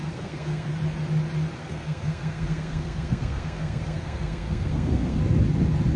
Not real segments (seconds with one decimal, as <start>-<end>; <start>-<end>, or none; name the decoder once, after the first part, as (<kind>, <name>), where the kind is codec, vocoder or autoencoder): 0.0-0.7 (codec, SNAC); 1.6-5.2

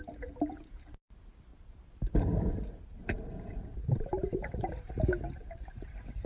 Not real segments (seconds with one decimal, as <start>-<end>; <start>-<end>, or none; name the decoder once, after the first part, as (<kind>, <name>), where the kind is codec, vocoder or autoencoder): 1.5-4.9 (vocoder, BigVGAN v2)

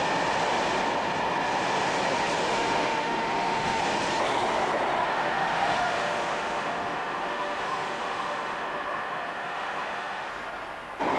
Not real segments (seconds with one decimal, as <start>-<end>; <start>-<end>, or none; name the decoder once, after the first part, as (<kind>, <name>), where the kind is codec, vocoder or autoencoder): 2.5-3.8 (autoencoder, DAC-VAE); 5.0-10.3

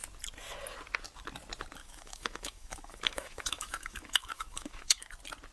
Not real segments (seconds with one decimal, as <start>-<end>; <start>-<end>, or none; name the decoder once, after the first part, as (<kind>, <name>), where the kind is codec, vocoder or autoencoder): 1.8-5.1 (autoencoder, DAC-VAE)